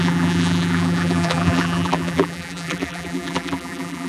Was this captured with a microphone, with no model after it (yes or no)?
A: no